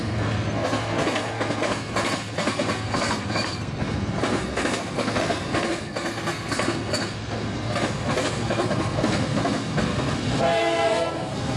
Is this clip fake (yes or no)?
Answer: yes